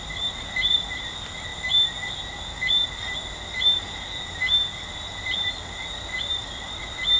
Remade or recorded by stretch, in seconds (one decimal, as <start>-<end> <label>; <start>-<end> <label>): 0.0-1.5 remade; 1.5-5.1 recorded; 5.1-7.2 remade